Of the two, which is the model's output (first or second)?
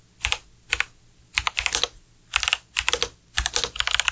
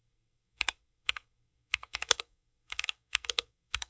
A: second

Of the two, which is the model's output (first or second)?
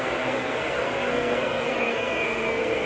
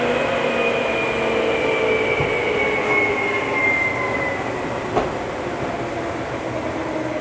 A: first